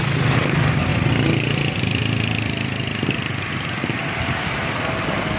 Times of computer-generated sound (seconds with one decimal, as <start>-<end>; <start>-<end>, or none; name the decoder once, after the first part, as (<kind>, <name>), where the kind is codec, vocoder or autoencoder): 4.0-4.8 (vocoder, BigVGAN v2)